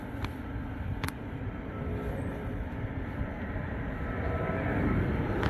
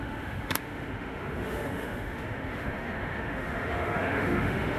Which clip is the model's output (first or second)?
second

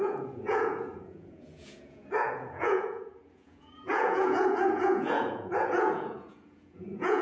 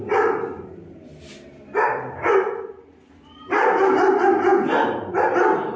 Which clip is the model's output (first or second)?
first